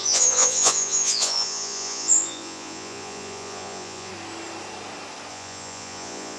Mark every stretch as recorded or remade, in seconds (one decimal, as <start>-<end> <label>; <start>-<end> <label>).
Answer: 0.0-4.1 remade; 4.1-5.3 recorded; 5.3-6.4 remade

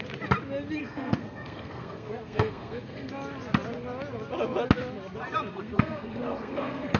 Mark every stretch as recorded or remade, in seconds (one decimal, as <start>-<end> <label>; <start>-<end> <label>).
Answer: 0.0-0.8 recorded; 0.8-3.1 remade; 3.1-5.5 recorded; 5.5-7.0 remade

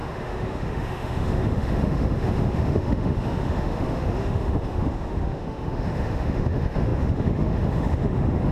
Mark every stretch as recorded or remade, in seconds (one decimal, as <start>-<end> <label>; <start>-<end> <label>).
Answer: 0.0-8.5 remade

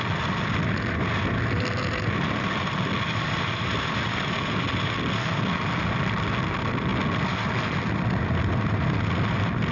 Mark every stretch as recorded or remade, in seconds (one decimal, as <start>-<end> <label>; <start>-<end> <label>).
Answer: 0.0-9.7 recorded